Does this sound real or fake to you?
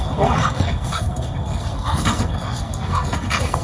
fake